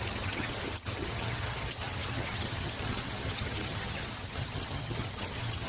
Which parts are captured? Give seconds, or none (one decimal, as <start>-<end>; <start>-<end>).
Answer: none